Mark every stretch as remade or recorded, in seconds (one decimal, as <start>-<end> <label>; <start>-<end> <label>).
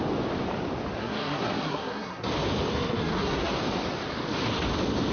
0.0-1.0 recorded; 1.0-2.3 remade; 2.3-2.7 recorded; 2.7-3.5 remade; 3.5-5.1 recorded